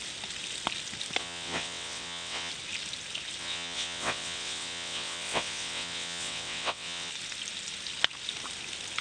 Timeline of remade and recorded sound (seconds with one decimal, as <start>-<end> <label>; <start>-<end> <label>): 0.0-1.2 recorded; 1.2-2.5 remade; 2.5-3.4 recorded; 3.4-7.1 remade; 7.1-9.0 recorded